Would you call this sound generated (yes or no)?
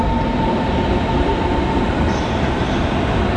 no